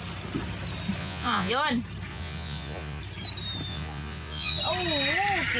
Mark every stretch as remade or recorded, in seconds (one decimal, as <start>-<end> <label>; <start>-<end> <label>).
0.0-1.0 recorded; 1.0-1.5 remade; 1.5-2.1 recorded; 2.1-3.0 remade; 3.0-3.7 recorded; 3.7-4.6 remade; 4.6-5.6 recorded